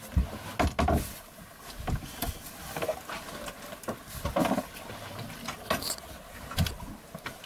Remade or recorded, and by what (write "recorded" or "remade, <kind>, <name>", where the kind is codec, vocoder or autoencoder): recorded